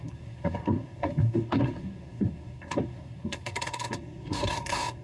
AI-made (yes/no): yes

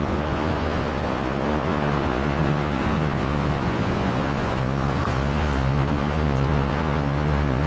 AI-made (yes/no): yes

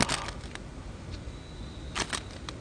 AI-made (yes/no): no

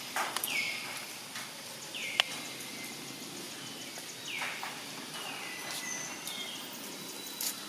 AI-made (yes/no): no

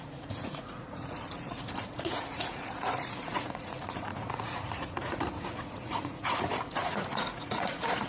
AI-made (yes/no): yes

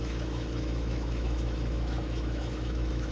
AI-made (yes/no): yes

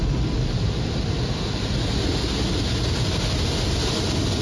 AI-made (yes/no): no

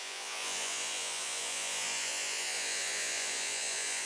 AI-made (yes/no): yes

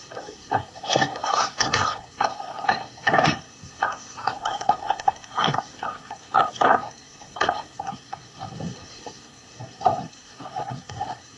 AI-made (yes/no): yes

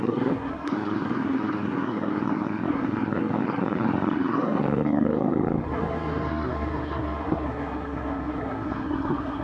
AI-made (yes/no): yes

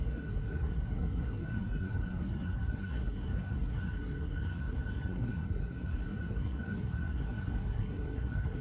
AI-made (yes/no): yes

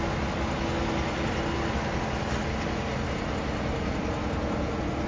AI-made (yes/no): no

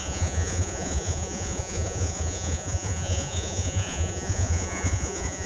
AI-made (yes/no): yes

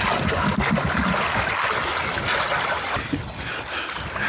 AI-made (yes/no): no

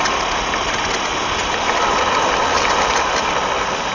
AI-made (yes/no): no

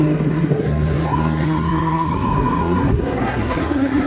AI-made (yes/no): yes